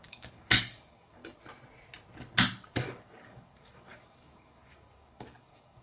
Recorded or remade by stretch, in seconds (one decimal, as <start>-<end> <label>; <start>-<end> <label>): 0.0-1.2 remade; 1.2-2.7 recorded; 2.7-5.8 remade